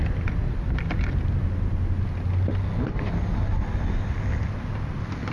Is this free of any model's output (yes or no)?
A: yes